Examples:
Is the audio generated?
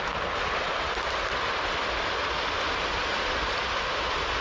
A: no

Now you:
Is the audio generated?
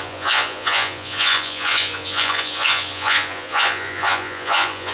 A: yes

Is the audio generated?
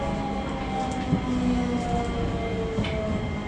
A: no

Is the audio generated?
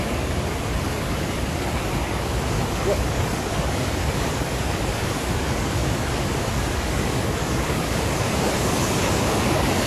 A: yes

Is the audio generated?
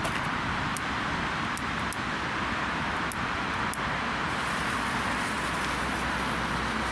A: no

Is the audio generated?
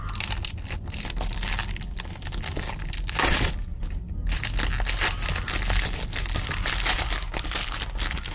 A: no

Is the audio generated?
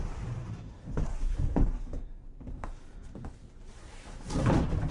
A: yes